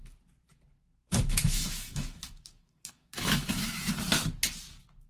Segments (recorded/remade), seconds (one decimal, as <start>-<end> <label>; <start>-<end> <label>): 0.0-0.8 recorded; 0.8-3.9 remade; 3.9-5.1 recorded